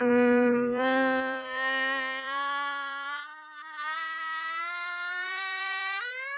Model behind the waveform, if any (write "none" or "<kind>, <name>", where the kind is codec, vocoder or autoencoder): vocoder, BigVGAN v2